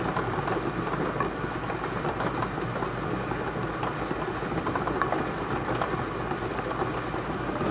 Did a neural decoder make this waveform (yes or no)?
no